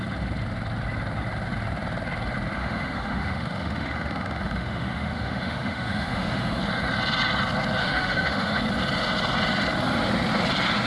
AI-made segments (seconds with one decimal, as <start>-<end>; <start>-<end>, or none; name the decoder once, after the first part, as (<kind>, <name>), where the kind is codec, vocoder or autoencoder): 2.6-6.6 (autoencoder, DAC-VAE); 7.8-8.6